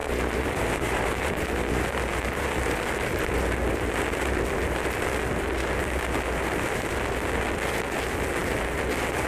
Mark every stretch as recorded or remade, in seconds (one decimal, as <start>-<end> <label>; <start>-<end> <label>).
0.0-1.3 remade; 1.3-9.3 recorded